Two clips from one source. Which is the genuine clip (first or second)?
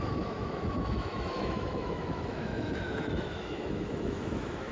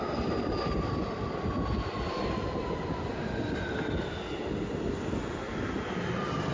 second